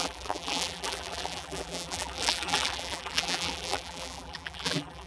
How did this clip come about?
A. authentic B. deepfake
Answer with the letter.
B